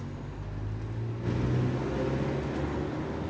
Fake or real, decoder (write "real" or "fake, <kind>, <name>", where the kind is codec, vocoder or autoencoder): real